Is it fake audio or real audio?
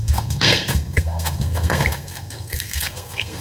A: fake